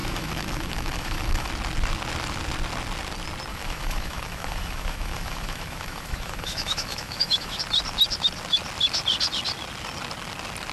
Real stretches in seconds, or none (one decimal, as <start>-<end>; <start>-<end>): 1.5-3.5; 7.6-10.7